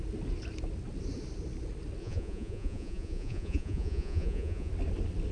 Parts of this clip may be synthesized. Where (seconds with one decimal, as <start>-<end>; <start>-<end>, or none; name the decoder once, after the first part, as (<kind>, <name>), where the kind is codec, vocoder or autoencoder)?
2.0-4.7 (vocoder, Vocos)